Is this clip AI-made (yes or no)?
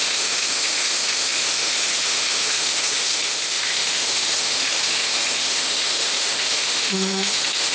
yes